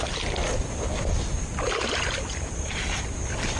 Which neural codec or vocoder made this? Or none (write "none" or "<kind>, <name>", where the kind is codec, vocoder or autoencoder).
none